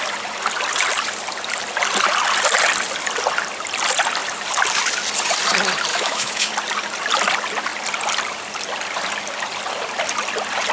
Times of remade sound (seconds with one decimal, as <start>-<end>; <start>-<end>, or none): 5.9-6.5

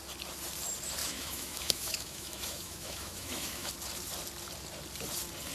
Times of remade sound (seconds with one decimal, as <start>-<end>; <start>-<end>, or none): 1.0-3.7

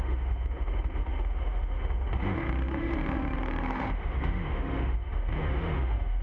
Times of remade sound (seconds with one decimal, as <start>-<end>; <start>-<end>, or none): 0.0-6.2

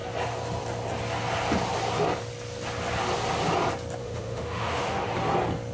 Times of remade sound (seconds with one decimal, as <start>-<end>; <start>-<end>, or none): 4.0-5.1

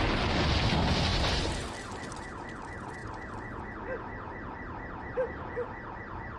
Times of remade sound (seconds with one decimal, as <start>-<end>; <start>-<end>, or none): none